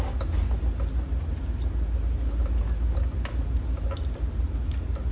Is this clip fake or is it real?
real